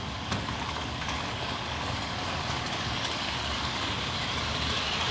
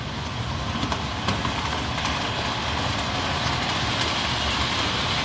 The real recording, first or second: second